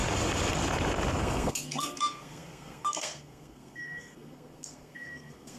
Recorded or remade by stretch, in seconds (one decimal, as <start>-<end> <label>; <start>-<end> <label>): 0.0-1.2 recorded; 1.2-5.6 remade